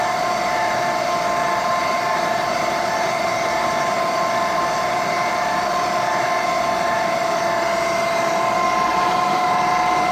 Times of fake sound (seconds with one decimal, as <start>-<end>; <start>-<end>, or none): 1.4-5.3; 8.9-9.4